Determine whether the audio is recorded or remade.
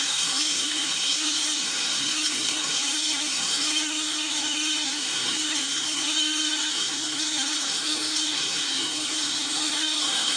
remade